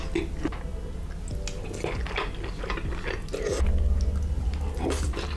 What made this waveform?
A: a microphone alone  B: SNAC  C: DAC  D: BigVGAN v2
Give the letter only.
A